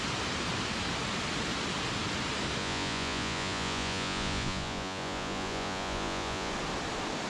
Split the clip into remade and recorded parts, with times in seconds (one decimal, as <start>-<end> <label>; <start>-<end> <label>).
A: 0.0-2.6 recorded; 2.6-6.5 remade; 6.5-7.3 recorded